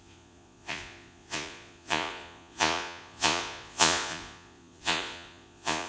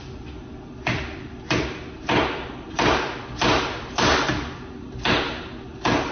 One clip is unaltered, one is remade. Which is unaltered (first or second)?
second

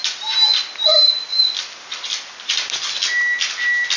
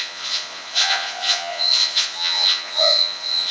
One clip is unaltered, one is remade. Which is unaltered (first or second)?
first